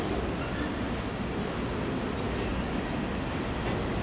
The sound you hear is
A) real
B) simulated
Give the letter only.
A